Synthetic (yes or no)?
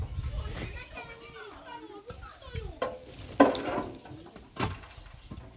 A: no